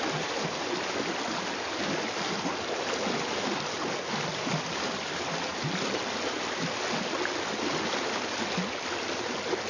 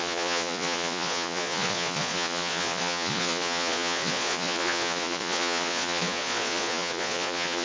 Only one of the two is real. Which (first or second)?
first